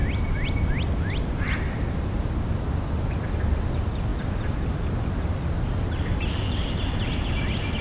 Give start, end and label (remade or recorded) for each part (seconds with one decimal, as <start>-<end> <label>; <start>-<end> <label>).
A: 0.0-7.8 recorded